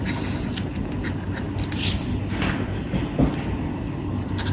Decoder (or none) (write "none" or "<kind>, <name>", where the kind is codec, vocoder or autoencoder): none